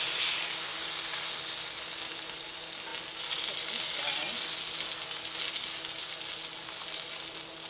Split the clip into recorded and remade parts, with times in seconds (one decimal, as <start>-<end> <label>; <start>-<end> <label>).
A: 0.0-7.7 recorded